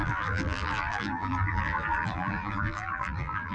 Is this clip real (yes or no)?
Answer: no